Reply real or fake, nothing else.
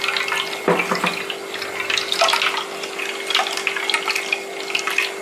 real